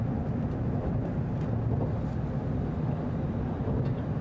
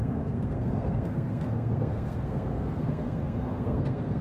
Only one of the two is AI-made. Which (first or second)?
second